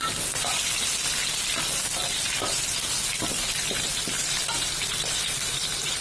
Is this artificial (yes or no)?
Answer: no